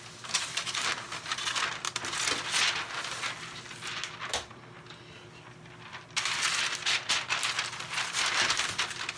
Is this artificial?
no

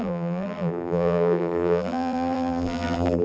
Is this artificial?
yes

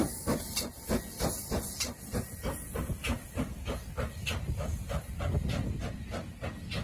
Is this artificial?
no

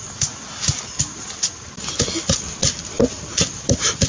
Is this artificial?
no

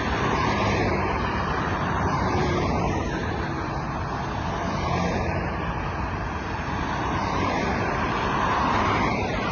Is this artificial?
yes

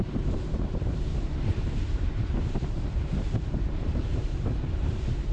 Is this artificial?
yes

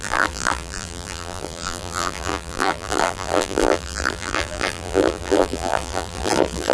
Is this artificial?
yes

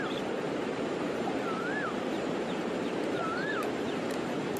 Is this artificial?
yes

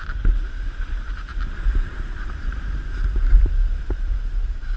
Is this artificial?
yes